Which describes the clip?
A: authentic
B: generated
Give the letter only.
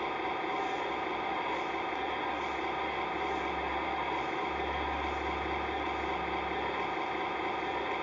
A